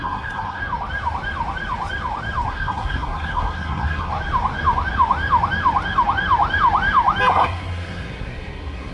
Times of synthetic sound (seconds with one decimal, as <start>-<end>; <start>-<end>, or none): 0.0-0.6; 2.5-4.1; 7.3-8.9